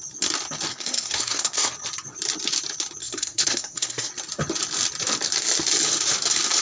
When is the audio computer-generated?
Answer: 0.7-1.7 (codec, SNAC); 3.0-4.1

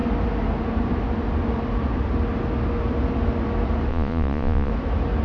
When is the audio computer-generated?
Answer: 3.9-4.7 (vocoder, Vocos)

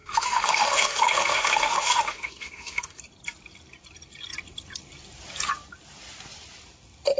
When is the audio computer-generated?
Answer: 0.0-3.0 (autoencoder, DAC-VAE)

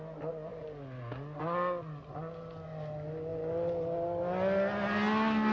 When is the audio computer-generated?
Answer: none

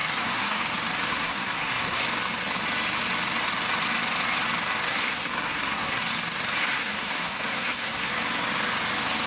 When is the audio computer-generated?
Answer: 0.0-0.6 (codec, SNAC); 1.1-2.0; 4.9-6.0; 6.6-8.1